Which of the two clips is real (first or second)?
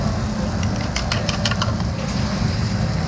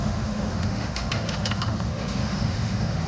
first